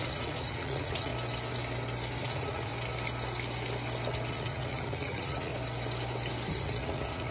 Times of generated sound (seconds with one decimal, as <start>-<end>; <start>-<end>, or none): 0.0-1.1; 2.2-2.7; 4.3-5.5; 6.6-7.3